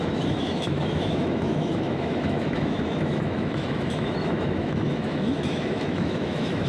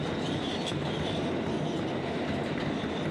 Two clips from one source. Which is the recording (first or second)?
second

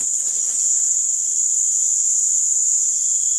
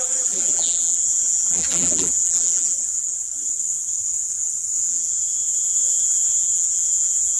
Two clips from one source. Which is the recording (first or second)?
first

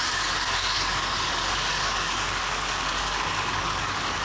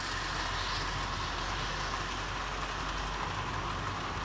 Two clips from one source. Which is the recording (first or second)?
second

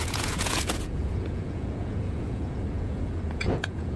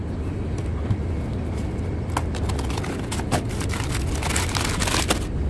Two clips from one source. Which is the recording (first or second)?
second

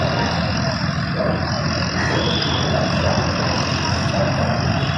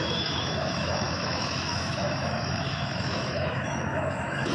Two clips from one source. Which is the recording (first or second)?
first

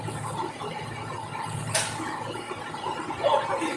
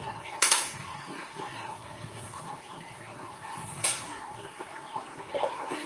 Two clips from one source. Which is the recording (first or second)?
first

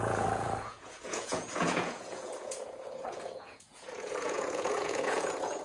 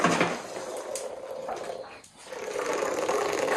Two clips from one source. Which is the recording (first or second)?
second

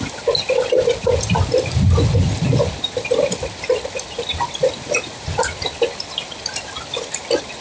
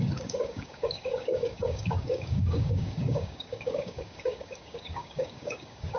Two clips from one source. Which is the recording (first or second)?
first